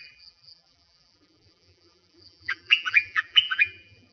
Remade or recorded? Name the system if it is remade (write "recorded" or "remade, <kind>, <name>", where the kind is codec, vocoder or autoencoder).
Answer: remade, vocoder, BigVGAN v2